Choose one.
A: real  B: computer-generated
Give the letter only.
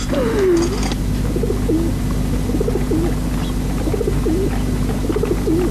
A